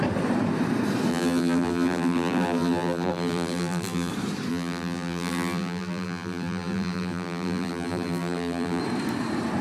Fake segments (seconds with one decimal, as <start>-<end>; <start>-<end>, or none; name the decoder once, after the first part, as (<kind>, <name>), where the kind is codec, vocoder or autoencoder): 1.1-4.1 (vocoder, BigVGAN v2); 4.5-8.8